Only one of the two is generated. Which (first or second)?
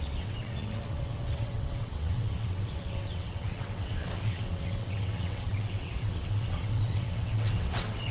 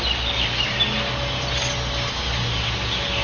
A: first